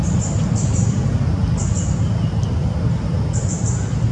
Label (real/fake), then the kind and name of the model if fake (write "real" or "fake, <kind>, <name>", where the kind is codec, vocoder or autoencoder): real